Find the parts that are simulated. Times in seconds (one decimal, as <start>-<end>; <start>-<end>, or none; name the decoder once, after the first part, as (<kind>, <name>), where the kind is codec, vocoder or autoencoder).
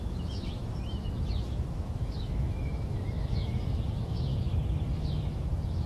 0.0-4.3 (autoencoder, DAC-VAE); 4.9-5.9